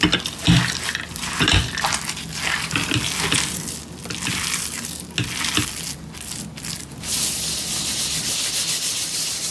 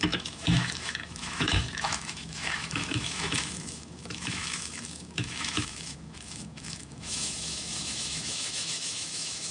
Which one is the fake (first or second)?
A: second